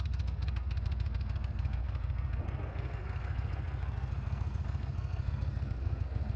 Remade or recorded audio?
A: remade